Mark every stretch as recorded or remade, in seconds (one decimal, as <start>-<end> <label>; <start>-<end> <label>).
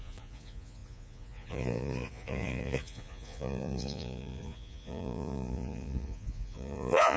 0.0-7.2 remade